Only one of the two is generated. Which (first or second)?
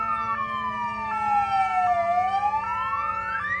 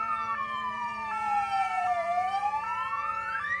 second